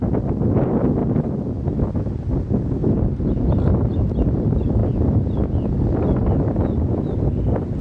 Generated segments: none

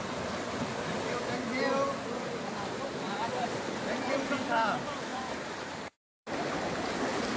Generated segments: 5.1-6.1 (vocoder, BigVGAN v2)

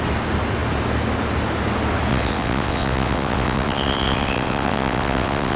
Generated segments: 2.1-5.6 (vocoder, WaveNeXt)

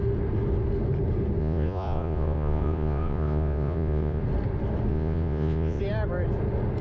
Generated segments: 1.4-4.2 (vocoder, Vocos); 4.9-5.8

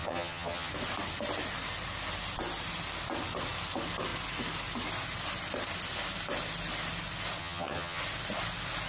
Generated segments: 0.0-0.7 (vocoder, HiFi-GAN); 7.4-8.0